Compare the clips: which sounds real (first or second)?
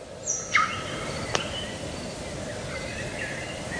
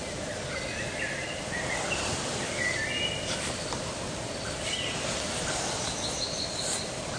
second